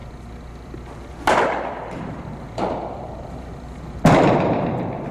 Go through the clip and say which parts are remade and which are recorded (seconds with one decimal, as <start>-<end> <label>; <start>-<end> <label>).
0.0-1.7 recorded; 1.7-5.1 remade